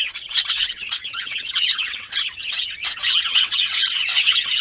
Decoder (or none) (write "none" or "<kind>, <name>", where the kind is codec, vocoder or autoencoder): vocoder, WaveNeXt